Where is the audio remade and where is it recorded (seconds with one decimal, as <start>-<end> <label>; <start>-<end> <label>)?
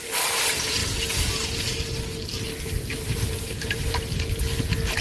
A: 0.0-0.8 remade; 0.8-2.7 recorded; 2.7-4.1 remade; 4.1-5.0 recorded